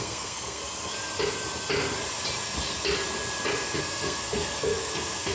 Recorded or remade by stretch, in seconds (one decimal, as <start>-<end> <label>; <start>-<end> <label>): 0.0-0.6 remade; 0.6-3.8 recorded; 3.8-5.3 remade